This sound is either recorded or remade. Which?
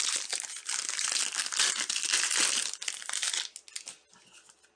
recorded